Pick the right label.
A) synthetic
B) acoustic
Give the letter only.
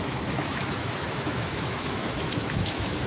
A